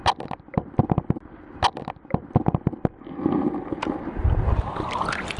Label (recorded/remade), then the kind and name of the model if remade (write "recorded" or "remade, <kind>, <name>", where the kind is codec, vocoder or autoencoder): recorded